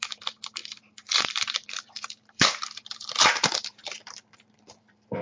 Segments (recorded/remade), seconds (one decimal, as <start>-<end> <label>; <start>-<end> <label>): 0.0-5.2 remade